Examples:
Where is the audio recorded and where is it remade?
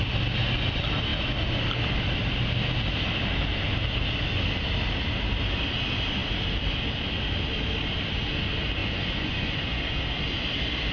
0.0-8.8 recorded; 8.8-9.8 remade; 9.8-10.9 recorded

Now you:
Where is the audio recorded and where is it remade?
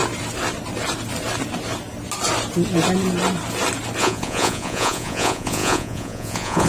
0.0-4.0 recorded; 4.0-6.7 remade